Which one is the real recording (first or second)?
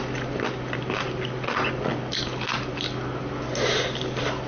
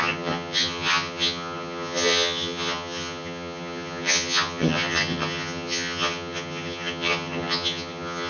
first